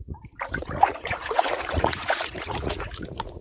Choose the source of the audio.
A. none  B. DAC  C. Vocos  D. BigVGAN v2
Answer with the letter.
C